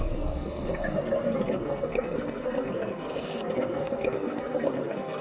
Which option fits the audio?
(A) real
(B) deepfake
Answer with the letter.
B